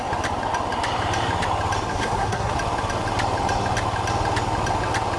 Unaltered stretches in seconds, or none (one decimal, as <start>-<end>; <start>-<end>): 0.0-1.9; 2.5-5.2